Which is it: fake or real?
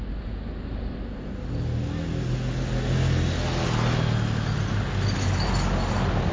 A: real